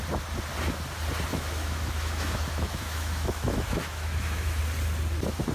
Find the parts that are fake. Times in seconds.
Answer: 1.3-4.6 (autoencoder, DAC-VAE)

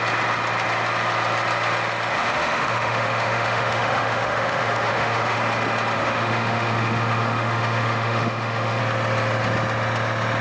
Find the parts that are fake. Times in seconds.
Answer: 2.1-5.4 (autoencoder, DAC-VAE); 6.0-8.8

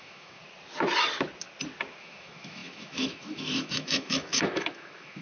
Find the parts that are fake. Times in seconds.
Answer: 0.0-0.4 (autoencoder, DAC-VAE); 2.0-5.2

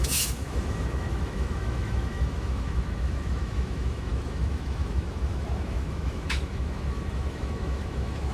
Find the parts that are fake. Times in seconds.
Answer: 0.0-8.3 (autoencoder, DAC-VAE)

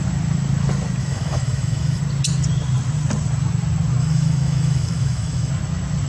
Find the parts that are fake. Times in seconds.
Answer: 1.0-2.0 (autoencoder, DAC-VAE); 4.0-5.5

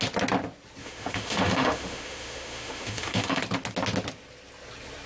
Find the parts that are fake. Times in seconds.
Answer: 0.8-3.4 (autoencoder, DAC-VAE)